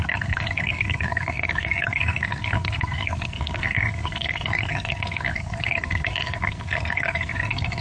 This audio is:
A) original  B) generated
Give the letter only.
B